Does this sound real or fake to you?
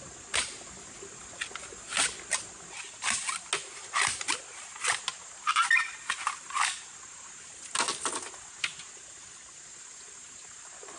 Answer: real